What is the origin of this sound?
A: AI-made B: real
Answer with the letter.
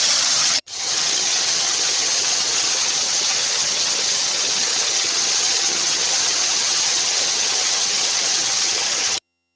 A